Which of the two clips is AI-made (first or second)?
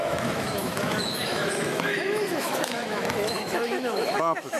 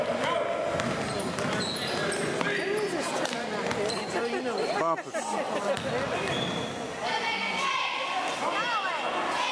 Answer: first